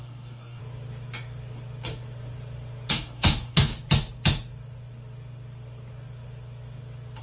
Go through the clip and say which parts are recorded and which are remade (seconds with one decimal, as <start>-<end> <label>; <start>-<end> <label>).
0.0-0.6 remade; 0.6-2.9 recorded; 2.9-3.7 remade; 3.7-7.2 recorded